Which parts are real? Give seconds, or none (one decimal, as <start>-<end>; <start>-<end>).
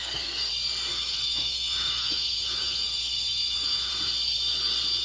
0.5-0.9; 3.9-5.0